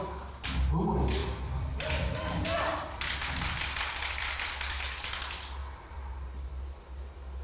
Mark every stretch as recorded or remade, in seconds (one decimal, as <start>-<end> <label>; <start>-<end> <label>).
0.0-1.2 recorded; 1.2-4.9 remade; 4.9-5.6 recorded; 5.6-6.8 remade; 6.8-7.4 recorded